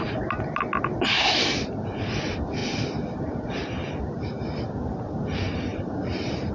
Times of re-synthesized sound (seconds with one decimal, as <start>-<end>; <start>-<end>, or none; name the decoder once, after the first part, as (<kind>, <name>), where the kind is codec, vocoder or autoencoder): 2.6-3.9 (vocoder, BigVGAN v2); 5.7-6.5